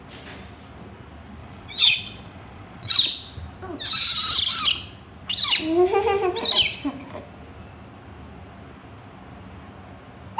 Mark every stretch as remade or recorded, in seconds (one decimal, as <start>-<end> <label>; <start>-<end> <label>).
0.0-1.4 recorded; 1.4-2.9 remade; 2.9-10.4 recorded